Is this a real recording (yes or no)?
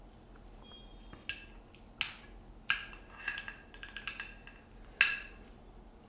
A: yes